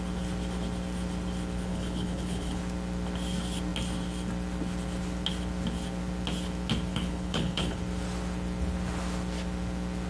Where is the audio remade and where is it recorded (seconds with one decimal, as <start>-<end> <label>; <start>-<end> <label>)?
0.0-1.7 recorded; 1.7-2.6 remade; 2.6-6.9 recorded; 6.9-7.8 remade; 7.8-10.1 recorded